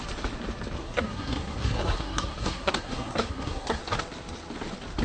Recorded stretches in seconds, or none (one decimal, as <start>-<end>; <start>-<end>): 0.0-0.8; 3.8-5.0